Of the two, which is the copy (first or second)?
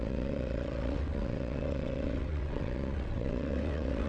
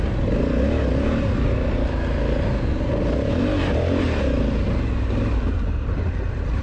first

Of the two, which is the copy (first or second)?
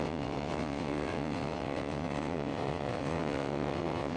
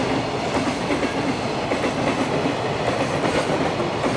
first